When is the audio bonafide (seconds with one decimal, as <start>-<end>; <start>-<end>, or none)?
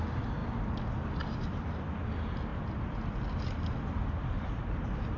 0.0-5.2